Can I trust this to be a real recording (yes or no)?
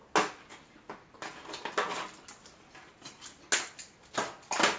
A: yes